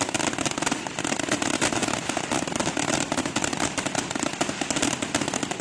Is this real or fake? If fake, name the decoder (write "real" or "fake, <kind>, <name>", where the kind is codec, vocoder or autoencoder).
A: real